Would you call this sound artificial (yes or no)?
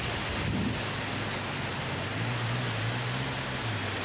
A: no